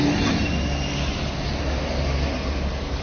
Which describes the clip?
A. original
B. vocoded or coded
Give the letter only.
A